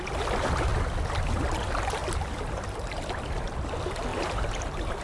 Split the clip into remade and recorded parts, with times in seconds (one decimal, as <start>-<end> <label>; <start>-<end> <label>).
0.0-2.0 recorded; 2.0-2.6 remade; 2.6-4.1 recorded; 4.1-5.0 remade